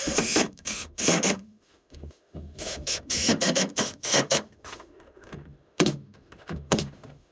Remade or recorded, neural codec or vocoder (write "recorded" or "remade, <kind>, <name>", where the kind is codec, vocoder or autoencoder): remade, autoencoder, DAC-VAE